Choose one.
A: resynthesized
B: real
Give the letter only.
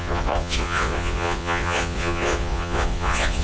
A